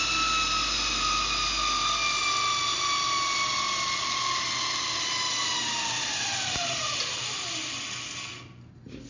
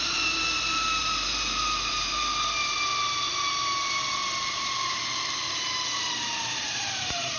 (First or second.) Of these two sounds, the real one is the first